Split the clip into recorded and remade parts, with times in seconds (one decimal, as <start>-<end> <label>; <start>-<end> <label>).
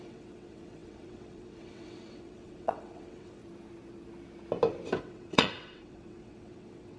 0.0-3.4 remade; 3.4-5.0 recorded; 5.0-7.0 remade